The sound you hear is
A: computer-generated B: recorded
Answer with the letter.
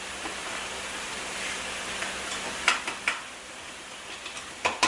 B